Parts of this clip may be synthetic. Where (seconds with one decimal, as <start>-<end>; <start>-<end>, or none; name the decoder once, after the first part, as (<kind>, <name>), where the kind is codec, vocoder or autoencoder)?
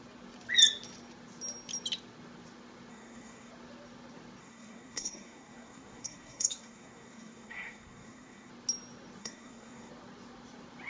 2.9-3.5 (codec, SNAC); 4.4-8.5; 9.2-9.9